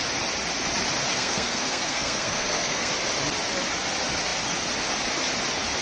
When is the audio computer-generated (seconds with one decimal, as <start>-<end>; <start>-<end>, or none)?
1.1-2.9

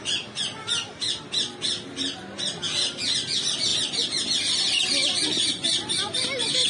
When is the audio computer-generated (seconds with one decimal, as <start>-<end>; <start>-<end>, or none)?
none

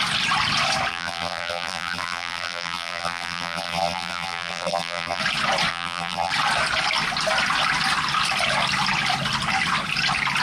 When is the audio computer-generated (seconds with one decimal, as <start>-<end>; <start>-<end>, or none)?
0.9-5.2; 5.7-6.3

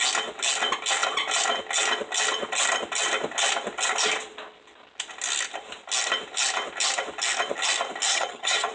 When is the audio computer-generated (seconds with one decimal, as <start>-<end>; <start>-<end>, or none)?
8.1-8.7

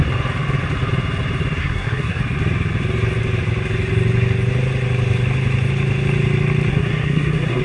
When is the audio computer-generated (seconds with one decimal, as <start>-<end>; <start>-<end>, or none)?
1.6-2.2; 6.7-7.6

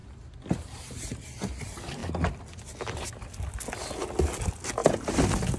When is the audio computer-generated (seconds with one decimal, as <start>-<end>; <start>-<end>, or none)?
none

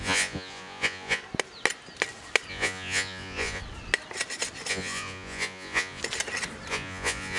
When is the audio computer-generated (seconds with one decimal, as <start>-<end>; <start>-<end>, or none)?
0.0-1.2; 2.5-3.6; 4.7-6.0; 6.7-7.4